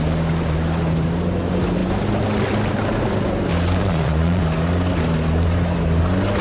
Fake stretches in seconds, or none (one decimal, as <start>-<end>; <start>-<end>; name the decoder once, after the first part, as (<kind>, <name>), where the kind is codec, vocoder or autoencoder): 3.8-4.4 (vocoder, Vocos)